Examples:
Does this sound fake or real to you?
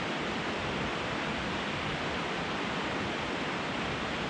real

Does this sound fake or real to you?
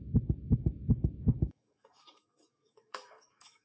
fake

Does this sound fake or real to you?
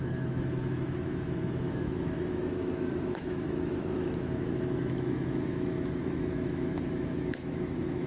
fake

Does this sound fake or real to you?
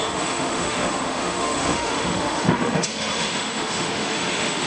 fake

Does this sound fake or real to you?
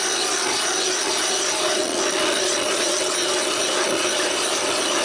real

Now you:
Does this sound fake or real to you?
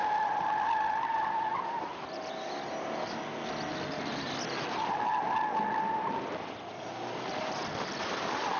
real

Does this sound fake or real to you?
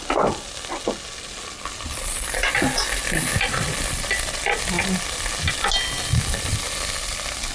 real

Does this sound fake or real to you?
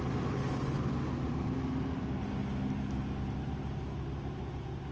real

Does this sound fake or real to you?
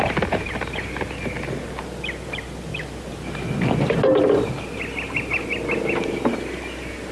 real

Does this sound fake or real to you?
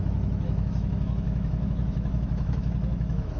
fake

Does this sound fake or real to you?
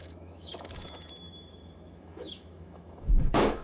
fake